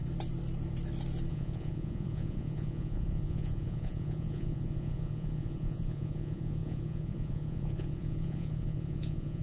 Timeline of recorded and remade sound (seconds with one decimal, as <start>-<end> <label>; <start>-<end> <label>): 0.0-1.3 recorded; 1.3-9.4 remade